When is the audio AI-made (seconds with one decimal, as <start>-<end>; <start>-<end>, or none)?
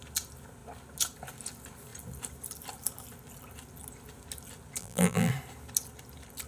4.8-5.3